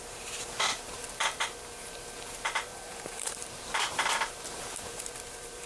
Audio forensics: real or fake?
fake